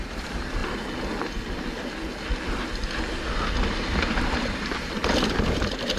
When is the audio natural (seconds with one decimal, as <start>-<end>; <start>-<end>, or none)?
0.6-4.2